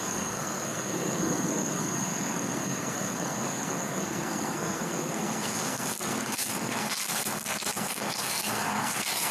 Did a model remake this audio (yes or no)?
yes